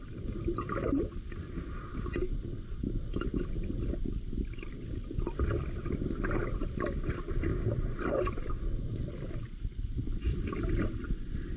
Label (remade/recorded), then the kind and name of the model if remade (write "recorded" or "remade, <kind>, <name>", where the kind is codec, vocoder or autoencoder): recorded